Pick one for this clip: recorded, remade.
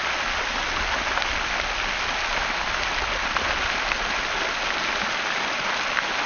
recorded